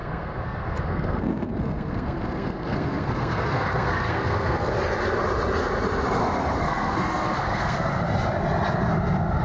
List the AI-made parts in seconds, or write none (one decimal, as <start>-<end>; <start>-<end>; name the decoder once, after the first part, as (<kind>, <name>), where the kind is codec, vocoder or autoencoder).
0.0-4.7 (codec, SNAC); 6.2-7.9